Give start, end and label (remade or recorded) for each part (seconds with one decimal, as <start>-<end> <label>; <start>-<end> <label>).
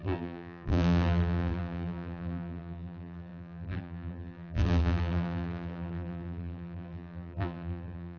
0.0-8.2 remade